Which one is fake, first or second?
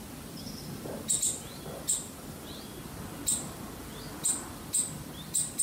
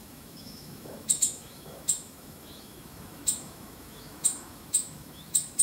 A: second